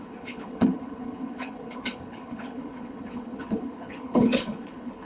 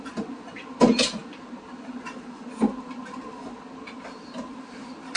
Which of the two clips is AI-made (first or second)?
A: first